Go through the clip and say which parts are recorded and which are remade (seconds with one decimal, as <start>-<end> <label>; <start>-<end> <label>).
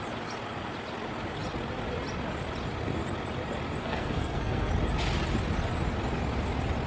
0.0-3.8 recorded; 3.8-4.7 remade; 4.7-6.9 recorded